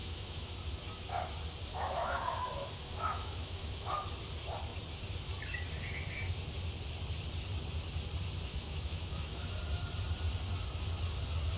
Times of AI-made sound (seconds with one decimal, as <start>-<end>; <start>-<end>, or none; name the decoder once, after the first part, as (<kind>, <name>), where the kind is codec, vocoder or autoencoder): 0.0-0.5 (autoencoder, DAC-VAE); 1.7-3.9; 8.5-9.6

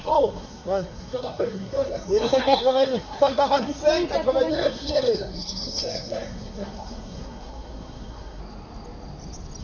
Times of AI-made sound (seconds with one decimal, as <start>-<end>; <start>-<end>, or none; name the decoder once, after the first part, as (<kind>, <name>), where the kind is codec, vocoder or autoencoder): 0.0-3.8 (codec, SNAC); 4.5-8.4